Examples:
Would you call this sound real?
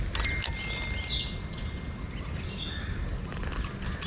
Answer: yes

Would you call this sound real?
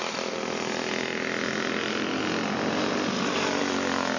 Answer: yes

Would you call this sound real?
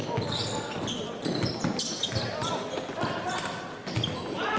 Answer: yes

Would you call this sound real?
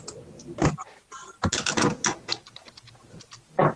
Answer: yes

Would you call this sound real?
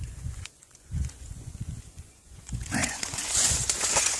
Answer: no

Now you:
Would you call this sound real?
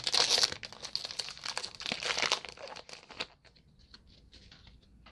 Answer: yes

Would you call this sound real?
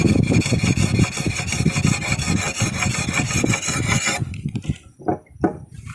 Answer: yes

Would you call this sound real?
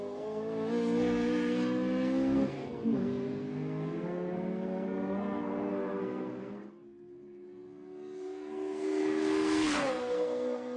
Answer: no